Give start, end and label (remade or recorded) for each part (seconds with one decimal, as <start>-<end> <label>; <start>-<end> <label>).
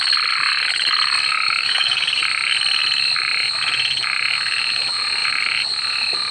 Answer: 0.0-1.6 recorded; 1.6-2.2 remade; 2.2-6.3 recorded